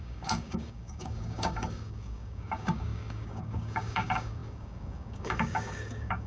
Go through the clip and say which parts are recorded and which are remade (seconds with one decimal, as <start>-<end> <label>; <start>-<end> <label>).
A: 0.0-6.3 remade